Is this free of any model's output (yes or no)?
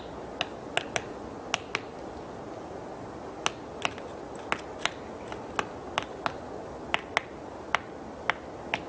yes